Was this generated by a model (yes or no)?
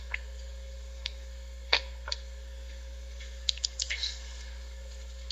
yes